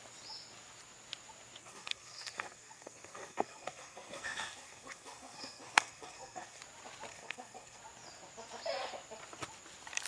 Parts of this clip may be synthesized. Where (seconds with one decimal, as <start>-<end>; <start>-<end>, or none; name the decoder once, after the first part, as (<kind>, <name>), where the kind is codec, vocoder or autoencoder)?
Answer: 1.6-6.6 (codec, SNAC); 7.1-7.8